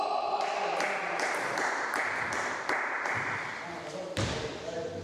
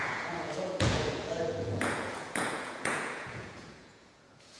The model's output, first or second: second